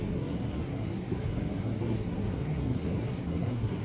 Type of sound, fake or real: fake